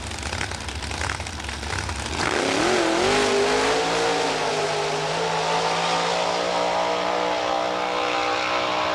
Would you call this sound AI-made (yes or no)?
no